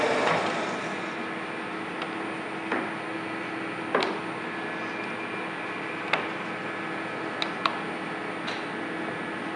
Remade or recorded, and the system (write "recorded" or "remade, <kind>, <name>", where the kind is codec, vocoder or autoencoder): recorded